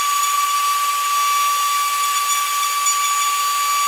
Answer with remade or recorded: recorded